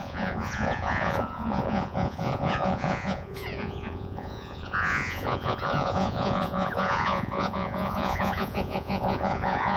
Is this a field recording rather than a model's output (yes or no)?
no